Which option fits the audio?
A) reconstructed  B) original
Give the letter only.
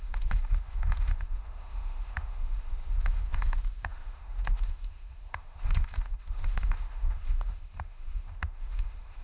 A